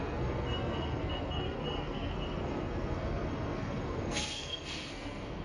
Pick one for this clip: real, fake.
fake